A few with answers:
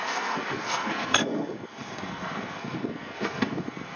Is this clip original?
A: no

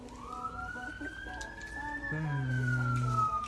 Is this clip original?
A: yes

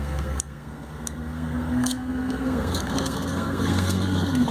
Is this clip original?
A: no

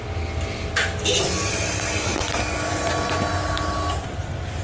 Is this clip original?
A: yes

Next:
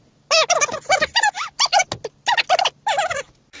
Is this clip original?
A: yes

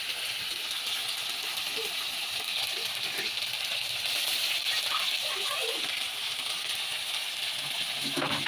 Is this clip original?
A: yes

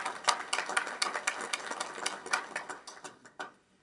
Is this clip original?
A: yes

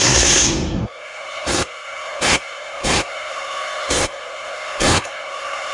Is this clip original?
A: no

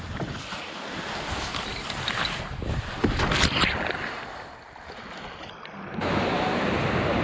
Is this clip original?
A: yes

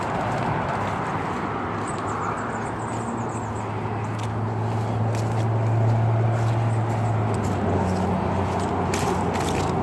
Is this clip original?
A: yes